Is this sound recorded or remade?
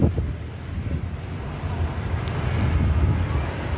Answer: recorded